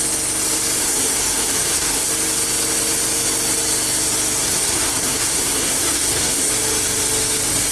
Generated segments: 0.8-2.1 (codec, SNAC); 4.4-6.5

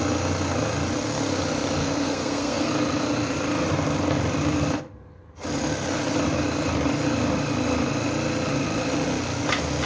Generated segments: 1.8-2.7 (codec, SNAC)

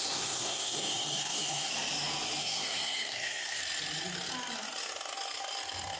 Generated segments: 0.0-1.7 (codec, SNAC); 2.4-3.6

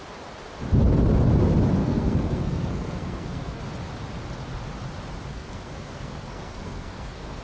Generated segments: 1.8-3.6 (codec, SNAC); 5.3-7.4

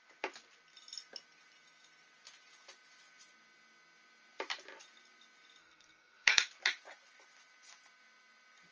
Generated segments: 5.6-6.4 (codec, SNAC)

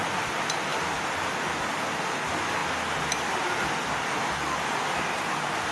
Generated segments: none

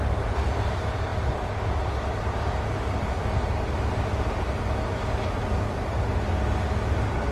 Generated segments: none

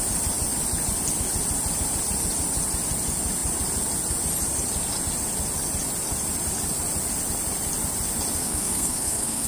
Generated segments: 8.4-9.5 (codec, SNAC)